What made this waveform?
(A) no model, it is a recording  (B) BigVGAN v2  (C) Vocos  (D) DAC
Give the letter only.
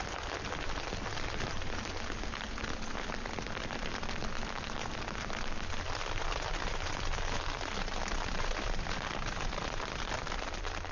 A